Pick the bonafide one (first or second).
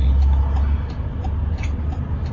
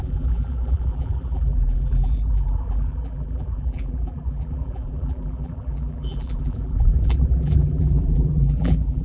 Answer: first